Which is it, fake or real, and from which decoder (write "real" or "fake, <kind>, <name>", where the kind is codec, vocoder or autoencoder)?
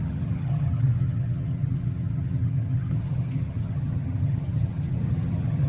fake, vocoder, HiFi-GAN